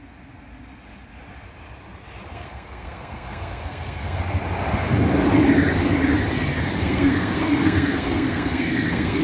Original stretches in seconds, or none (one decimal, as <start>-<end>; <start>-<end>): 0.0-2.3; 4.2-6.8